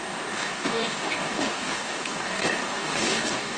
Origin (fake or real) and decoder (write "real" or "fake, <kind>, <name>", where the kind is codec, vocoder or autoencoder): fake, codec, DAC